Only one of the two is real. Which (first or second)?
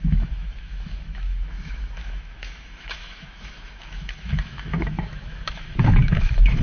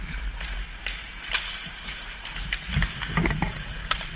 second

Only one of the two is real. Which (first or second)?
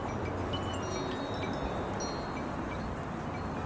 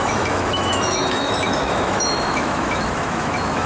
first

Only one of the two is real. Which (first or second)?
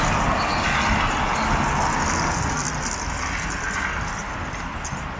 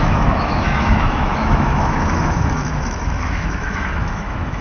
first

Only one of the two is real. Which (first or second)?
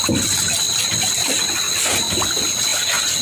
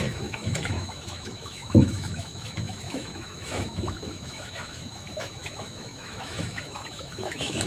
first